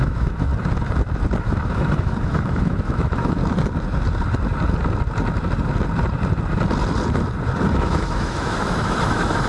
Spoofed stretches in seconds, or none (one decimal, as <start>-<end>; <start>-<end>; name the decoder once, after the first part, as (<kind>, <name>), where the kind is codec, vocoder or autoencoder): 0.0-0.5 (autoencoder, DAC-VAE); 1.4-3.4; 7.7-9.5